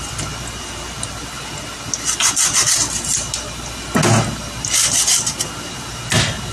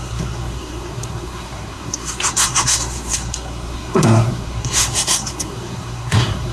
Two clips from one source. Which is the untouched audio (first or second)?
first